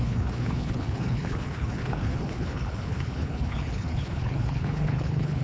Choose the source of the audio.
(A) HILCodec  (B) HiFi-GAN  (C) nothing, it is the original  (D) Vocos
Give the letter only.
A